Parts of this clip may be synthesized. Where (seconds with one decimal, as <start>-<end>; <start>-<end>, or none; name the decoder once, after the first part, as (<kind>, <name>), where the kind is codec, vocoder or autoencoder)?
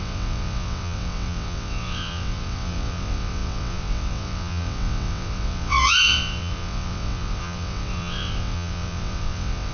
0.0-9.7 (vocoder, WaveNeXt)